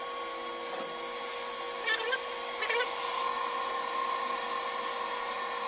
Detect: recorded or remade recorded